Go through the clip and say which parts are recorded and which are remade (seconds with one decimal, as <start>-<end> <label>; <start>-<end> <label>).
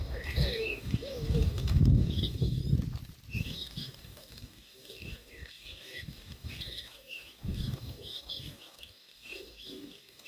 0.0-2.6 remade; 2.6-3.3 recorded; 3.3-10.3 remade